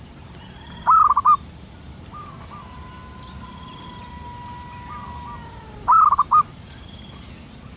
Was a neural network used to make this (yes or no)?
no